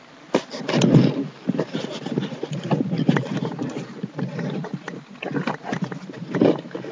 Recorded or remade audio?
recorded